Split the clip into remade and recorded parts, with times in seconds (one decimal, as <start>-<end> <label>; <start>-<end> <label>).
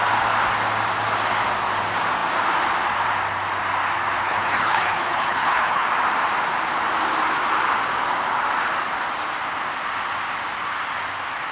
0.0-4.2 recorded; 4.2-5.9 remade; 5.9-11.5 recorded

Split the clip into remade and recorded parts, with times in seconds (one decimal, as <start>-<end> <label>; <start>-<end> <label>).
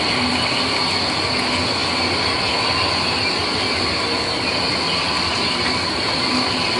0.0-6.8 recorded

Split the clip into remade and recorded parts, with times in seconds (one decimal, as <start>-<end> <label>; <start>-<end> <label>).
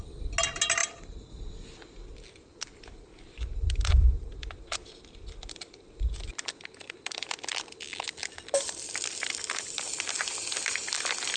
0.0-11.4 recorded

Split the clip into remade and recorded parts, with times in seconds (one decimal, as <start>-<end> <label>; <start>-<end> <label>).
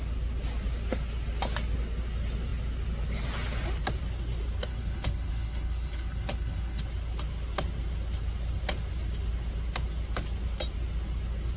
0.0-4.7 recorded; 4.7-6.8 remade; 6.8-11.6 recorded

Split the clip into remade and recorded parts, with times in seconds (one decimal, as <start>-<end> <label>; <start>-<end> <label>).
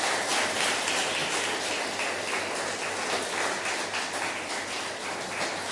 0.0-5.7 recorded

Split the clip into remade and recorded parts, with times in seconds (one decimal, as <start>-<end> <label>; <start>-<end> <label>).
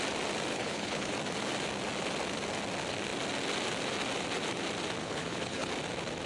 0.0-0.5 recorded; 0.5-1.1 remade; 1.1-5.0 recorded; 5.0-5.7 remade; 5.7-6.3 recorded